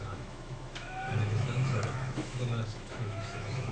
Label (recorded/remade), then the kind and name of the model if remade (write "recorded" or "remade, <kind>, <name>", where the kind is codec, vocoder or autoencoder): remade, autoencoder, DAC-VAE